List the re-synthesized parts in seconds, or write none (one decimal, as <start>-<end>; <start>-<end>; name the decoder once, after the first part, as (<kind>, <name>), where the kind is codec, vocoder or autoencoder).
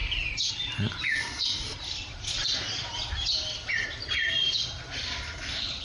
none